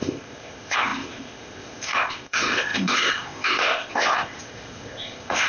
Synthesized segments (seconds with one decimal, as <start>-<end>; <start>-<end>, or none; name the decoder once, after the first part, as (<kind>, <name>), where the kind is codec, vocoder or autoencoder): 0.0-5.5 (codec, ZipCodec)